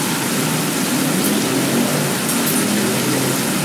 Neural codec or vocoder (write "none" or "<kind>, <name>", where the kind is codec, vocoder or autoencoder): none